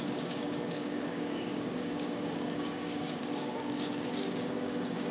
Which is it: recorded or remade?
remade